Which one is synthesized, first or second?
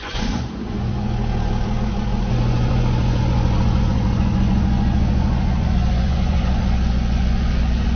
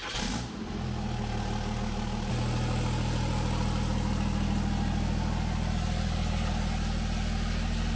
first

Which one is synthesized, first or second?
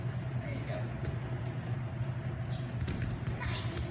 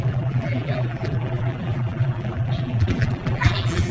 second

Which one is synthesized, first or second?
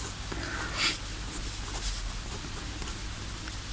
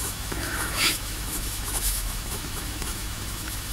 second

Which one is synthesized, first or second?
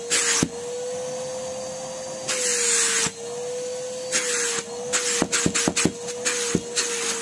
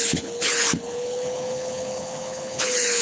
second